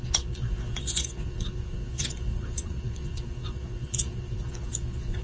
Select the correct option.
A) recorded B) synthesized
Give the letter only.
B